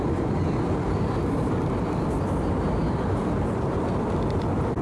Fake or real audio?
fake